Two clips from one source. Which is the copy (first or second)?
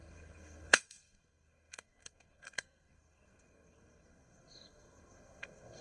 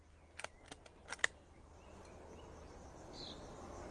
first